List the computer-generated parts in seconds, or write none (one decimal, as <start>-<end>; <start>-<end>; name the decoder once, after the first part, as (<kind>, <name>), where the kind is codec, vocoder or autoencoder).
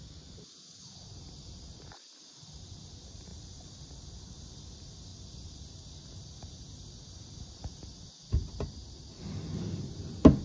none